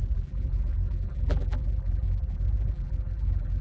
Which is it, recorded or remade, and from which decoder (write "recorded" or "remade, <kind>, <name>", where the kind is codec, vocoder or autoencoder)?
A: remade, vocoder, BigVGAN v2